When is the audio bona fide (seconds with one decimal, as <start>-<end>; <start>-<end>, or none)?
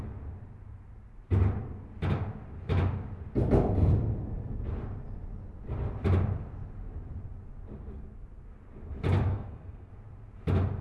0.0-9.3; 9.9-10.8